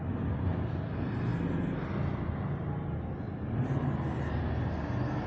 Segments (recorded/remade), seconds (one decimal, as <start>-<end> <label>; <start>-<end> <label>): 0.0-5.3 recorded